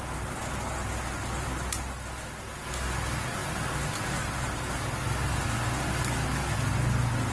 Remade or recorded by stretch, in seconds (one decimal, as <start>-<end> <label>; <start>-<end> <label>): 0.0-7.3 recorded